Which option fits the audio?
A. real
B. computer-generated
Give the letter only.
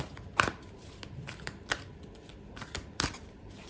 A